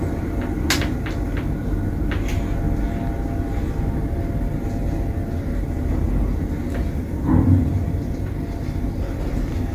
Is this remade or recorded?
recorded